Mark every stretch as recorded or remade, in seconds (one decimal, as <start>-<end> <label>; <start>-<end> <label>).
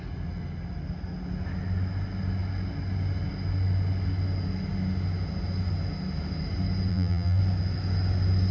0.0-6.9 recorded; 6.9-7.4 remade; 7.4-8.5 recorded